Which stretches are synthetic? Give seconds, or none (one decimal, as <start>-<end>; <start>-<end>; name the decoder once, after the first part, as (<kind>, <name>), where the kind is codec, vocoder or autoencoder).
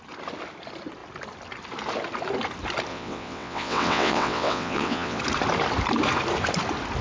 2.9-5.2 (vocoder, WaveNeXt)